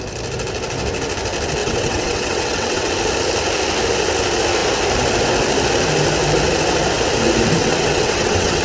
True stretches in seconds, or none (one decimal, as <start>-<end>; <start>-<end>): 0.0-1.6; 2.9-7.6